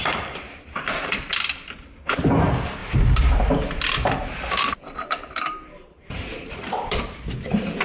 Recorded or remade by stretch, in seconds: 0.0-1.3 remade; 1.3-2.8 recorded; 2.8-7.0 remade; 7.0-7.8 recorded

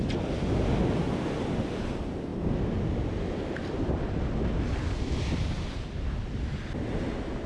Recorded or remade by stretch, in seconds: 0.0-7.5 recorded

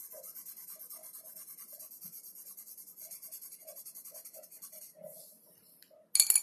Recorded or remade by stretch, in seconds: 0.0-6.4 recorded

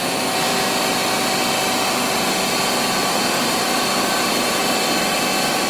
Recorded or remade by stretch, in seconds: 0.0-0.5 remade; 0.5-2.8 recorded; 2.8-4.6 remade; 4.6-5.7 recorded

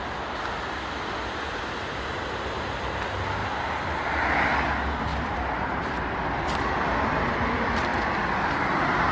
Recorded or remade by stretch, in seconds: 0.0-5.1 recorded; 5.1-6.5 remade; 6.5-7.9 recorded; 7.9-8.5 remade; 8.5-9.1 recorded

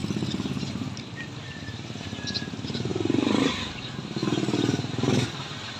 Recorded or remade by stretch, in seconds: 0.0-0.7 recorded; 0.7-4.2 remade; 4.2-4.9 recorded; 4.9-5.8 remade

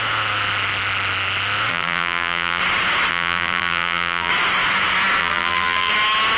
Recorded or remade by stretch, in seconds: 0.0-1.7 recorded; 1.7-2.6 remade; 2.6-3.1 recorded; 3.1-4.3 remade; 4.3-5.2 recorded; 5.2-5.9 remade; 5.9-6.4 recorded

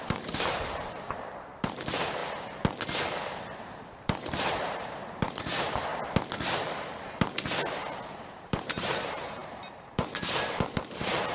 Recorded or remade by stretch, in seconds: 0.0-2.2 remade; 2.2-3.0 recorded; 3.0-5.9 remade; 5.9-8.3 recorded; 8.3-11.3 remade